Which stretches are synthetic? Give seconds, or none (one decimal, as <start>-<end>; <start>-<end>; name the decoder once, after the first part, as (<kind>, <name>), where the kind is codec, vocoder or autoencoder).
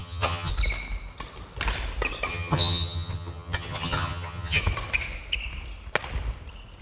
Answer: 0.0-0.5 (vocoder, HiFi-GAN); 2.3-4.6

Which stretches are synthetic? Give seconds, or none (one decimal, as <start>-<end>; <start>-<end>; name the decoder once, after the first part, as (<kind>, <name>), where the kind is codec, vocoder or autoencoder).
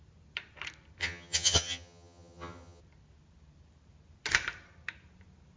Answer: 1.0-2.8 (vocoder, HiFi-GAN)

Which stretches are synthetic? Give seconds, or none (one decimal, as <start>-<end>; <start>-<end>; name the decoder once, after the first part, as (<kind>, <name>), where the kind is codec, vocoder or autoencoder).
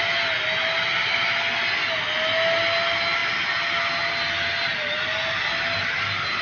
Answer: none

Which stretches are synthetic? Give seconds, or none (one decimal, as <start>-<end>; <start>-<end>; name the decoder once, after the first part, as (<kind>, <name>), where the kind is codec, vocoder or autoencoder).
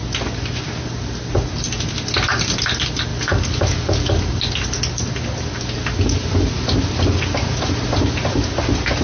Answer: none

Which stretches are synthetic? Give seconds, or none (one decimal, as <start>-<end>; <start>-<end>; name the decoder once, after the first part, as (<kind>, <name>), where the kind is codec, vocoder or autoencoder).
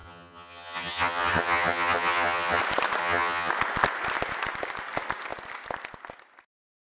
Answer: 0.0-2.6 (vocoder, HiFi-GAN); 3.0-3.5